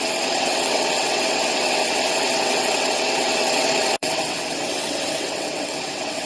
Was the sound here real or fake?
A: fake